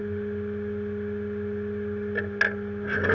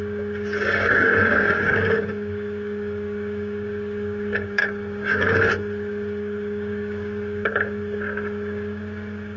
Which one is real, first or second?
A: first